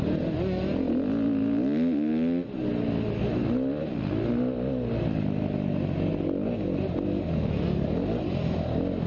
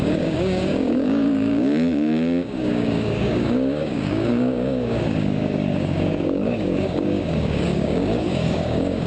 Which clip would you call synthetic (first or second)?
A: second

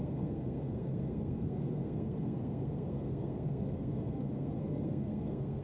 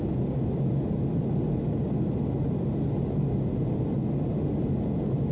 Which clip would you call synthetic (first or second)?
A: first